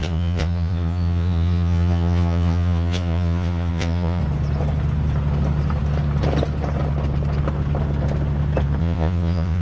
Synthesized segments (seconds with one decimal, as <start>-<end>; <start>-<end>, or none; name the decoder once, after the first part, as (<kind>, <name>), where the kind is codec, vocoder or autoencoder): 0.0-4.2 (vocoder, Vocos); 8.8-9.6